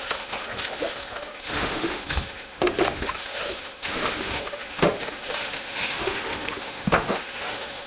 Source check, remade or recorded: remade